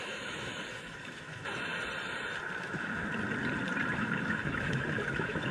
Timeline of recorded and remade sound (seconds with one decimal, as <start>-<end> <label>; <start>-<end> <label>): 0.0-1.7 remade; 1.7-2.6 recorded; 2.6-3.1 remade; 3.1-3.9 recorded; 3.9-5.5 remade